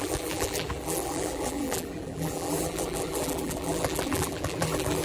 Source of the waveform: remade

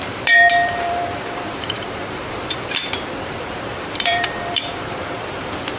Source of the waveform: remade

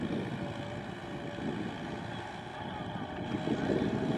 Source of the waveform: recorded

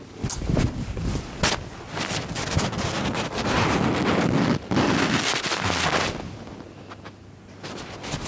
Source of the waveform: recorded